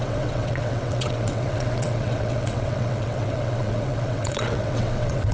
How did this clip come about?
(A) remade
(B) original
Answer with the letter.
A